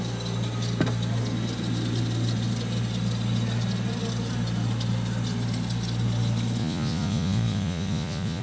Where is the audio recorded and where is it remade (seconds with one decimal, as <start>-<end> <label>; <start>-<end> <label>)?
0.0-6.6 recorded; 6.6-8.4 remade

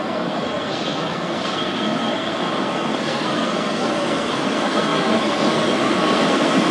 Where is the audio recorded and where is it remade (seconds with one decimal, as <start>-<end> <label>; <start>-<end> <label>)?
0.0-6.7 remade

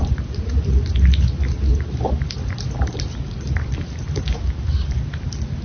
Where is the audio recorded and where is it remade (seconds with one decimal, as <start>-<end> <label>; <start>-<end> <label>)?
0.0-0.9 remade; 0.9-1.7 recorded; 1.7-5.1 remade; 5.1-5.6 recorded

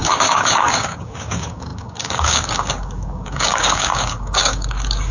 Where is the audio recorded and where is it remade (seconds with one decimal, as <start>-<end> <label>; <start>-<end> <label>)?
0.0-5.1 remade